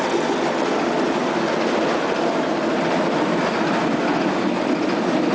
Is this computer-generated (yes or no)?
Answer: no